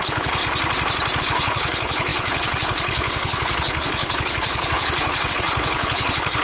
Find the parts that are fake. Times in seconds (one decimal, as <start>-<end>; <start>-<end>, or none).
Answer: 0.0-0.4; 1.2-6.4